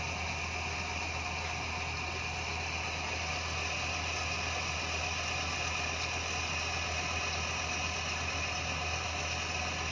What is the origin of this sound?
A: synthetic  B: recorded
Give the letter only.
B